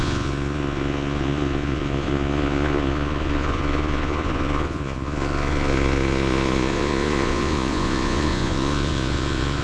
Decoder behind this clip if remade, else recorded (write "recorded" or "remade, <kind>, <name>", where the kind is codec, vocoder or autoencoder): remade, vocoder, Vocos